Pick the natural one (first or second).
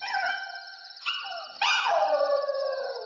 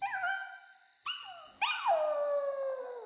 second